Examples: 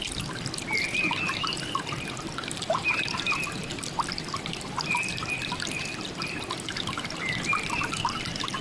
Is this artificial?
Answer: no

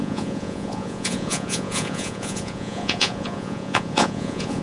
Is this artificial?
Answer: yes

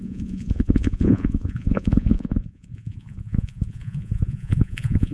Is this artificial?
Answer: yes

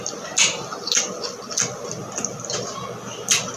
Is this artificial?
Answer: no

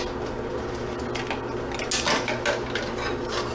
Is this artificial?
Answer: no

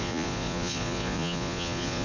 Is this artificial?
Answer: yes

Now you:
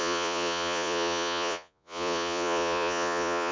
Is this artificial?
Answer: yes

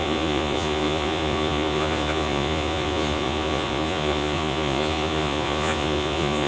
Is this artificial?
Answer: yes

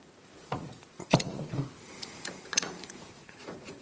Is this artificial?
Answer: yes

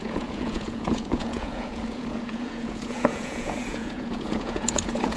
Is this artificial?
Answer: yes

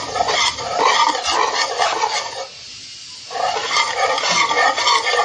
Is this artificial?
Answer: no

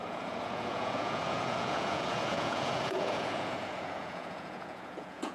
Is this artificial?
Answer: yes